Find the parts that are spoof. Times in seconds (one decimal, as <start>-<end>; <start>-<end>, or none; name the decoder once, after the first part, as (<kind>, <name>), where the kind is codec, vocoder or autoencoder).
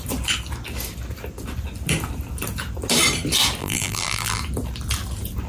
3.6-4.4 (vocoder, BigVGAN v2)